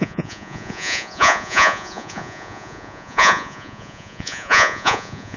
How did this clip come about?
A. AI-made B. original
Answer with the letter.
A